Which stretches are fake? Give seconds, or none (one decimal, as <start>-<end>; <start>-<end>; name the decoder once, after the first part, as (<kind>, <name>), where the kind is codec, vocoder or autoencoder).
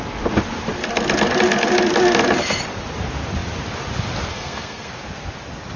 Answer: 4.3-4.9 (codec, SNAC)